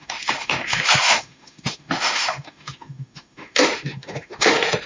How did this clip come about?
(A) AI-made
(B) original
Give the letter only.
A